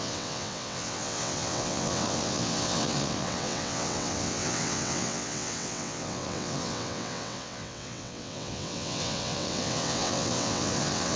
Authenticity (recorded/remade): remade